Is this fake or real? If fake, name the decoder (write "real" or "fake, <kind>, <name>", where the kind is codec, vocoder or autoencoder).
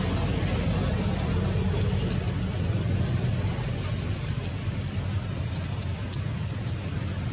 real